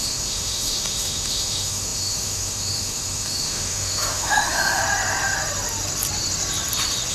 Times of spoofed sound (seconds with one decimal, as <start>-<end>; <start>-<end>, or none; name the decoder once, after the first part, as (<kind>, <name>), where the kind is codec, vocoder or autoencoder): 0.0-4.8 (autoencoder, DAC-VAE)